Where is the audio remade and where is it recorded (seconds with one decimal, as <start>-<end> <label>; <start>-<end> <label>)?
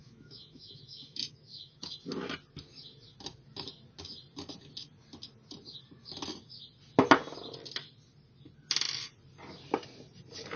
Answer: 0.0-2.0 remade; 2.0-10.6 recorded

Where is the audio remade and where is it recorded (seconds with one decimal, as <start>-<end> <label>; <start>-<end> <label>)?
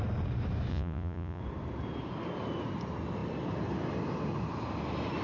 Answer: 0.0-0.7 recorded; 0.7-1.4 remade; 1.4-5.2 recorded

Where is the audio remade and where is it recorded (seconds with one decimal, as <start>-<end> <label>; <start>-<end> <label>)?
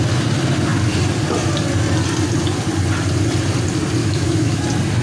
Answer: 0.0-4.0 recorded; 4.0-4.6 remade; 4.6-5.0 recorded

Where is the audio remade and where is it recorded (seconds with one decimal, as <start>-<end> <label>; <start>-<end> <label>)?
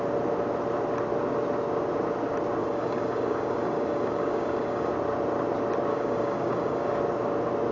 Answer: 0.0-2.6 recorded; 2.6-4.9 remade; 4.9-5.9 recorded; 5.9-7.0 remade; 7.0-7.7 recorded